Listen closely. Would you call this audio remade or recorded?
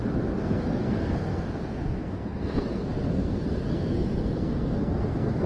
remade